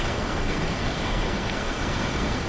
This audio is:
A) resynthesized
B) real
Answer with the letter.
A